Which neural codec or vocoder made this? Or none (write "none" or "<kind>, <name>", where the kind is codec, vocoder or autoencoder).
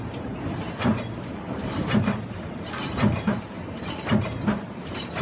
vocoder, BigVGAN v2